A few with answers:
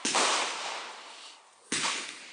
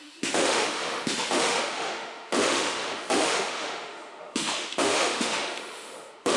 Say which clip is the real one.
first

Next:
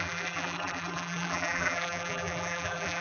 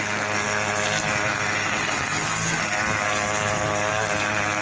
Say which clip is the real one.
second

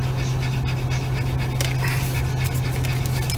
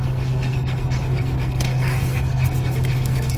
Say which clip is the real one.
first